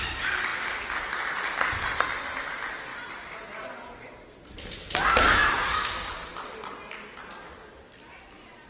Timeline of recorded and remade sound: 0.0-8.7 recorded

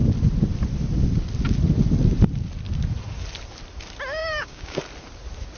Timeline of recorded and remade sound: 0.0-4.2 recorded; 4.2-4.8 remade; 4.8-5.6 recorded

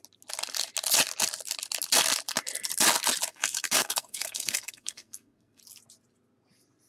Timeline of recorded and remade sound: 0.0-3.3 recorded; 3.3-5.6 remade; 5.6-6.9 recorded

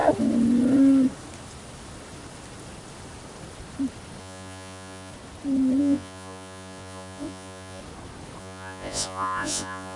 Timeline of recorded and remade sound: 0.0-4.2 recorded; 4.2-5.1 remade; 5.1-5.8 recorded; 5.8-7.8 remade; 7.8-8.4 recorded; 8.4-10.0 remade